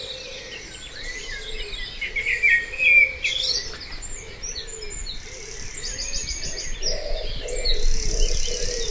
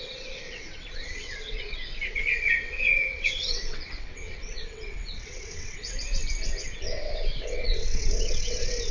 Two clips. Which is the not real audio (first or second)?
second